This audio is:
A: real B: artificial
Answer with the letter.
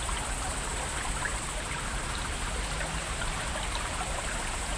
A